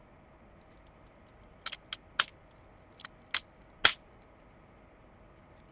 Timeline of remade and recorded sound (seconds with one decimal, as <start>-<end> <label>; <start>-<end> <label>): 0.0-5.7 recorded